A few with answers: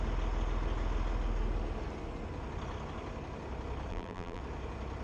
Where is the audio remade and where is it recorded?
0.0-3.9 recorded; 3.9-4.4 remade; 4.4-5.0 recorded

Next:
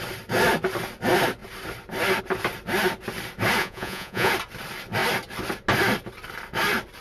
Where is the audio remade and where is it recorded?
0.0-3.6 recorded; 3.6-4.3 remade; 4.3-7.0 recorded

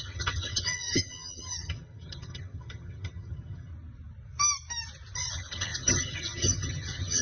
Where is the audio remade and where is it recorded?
0.0-3.7 remade; 3.7-5.3 recorded; 5.3-7.2 remade

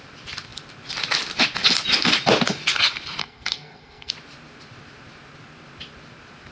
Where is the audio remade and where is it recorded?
0.0-3.2 recorded; 3.2-4.1 remade; 4.1-6.5 recorded

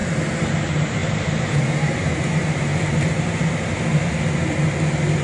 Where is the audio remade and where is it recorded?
0.0-0.6 recorded; 0.6-2.7 remade; 2.7-5.2 recorded

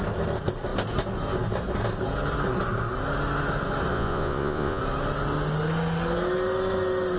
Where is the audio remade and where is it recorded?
0.0-3.9 recorded; 3.9-4.8 remade; 4.8-7.2 recorded

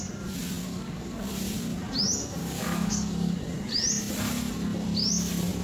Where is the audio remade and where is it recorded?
0.0-0.6 recorded; 0.6-1.3 remade; 1.3-2.4 recorded; 2.4-3.4 remade; 3.4-5.6 recorded

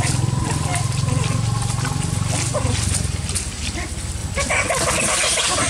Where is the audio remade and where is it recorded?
0.0-4.2 remade; 4.2-5.0 recorded; 5.0-5.7 remade